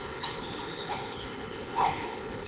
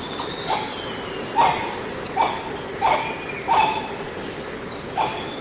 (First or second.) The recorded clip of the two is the second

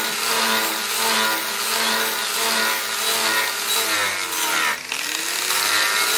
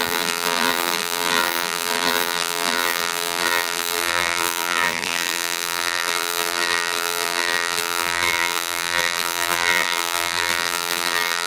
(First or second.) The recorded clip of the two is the first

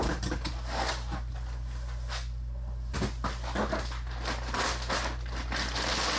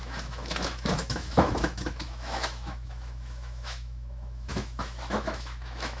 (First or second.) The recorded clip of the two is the first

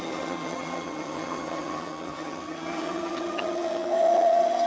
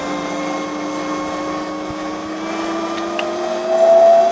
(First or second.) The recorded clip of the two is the second